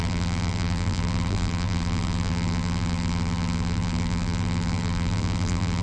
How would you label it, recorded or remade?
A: remade